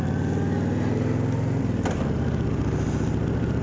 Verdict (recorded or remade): recorded